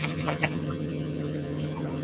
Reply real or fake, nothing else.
fake